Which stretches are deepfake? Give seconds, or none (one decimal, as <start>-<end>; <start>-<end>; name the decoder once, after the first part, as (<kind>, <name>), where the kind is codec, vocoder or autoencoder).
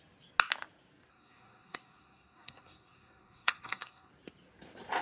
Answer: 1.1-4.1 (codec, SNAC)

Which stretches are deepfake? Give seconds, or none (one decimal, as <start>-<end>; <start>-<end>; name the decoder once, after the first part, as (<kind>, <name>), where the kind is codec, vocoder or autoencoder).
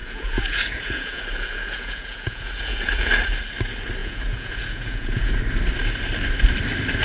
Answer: 0.0-3.1 (vocoder, Vocos); 4.0-5.4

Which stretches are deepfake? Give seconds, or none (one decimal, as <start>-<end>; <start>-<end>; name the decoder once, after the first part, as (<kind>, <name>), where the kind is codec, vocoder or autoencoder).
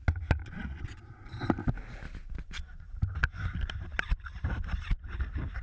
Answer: 0.4-1.1 (vocoder, Vocos)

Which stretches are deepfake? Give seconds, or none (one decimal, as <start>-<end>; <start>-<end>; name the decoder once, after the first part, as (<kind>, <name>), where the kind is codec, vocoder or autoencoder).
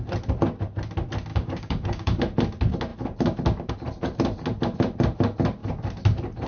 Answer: 1.3-2.2 (codec, DAC)